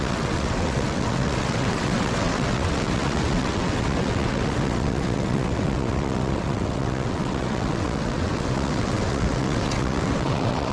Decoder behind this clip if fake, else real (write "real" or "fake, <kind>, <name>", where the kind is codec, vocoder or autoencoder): fake, vocoder, WaveNeXt